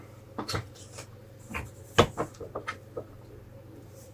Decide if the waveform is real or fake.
real